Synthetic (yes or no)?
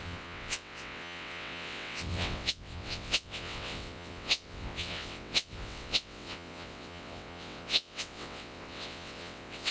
yes